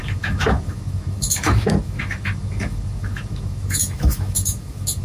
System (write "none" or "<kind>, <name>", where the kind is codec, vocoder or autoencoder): autoencoder, DAC-VAE